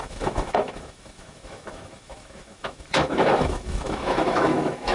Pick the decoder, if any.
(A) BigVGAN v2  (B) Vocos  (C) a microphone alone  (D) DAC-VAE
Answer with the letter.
D